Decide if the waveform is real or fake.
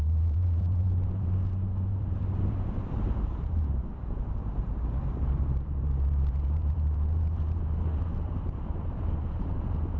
fake